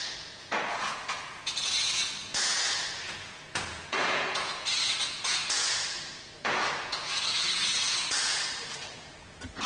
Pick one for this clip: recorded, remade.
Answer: remade